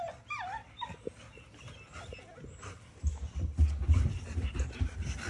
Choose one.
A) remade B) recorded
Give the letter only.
B